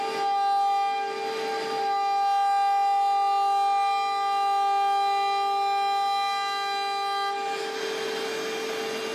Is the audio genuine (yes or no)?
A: yes